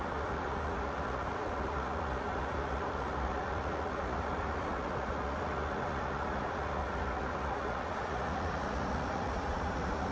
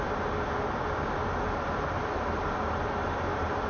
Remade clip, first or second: first